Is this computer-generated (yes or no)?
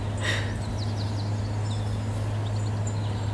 no